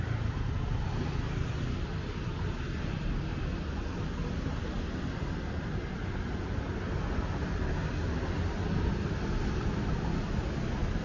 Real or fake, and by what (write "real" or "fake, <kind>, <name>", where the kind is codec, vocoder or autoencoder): real